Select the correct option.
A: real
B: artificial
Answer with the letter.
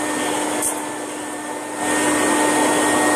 A